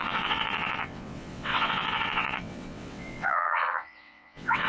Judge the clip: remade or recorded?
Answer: remade